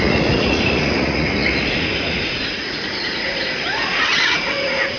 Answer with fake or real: fake